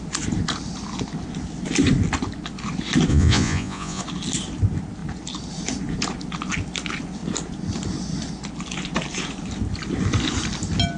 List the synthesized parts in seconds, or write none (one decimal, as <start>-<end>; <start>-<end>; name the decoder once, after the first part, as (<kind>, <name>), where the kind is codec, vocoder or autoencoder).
3.1-4.0 (vocoder, Vocos)